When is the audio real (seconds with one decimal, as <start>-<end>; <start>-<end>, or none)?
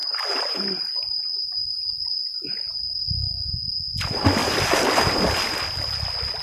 3.0-6.4